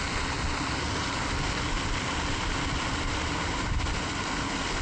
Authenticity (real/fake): real